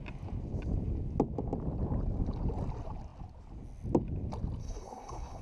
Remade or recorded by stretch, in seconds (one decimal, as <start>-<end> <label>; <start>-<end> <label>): 0.0-4.6 recorded; 4.6-5.4 remade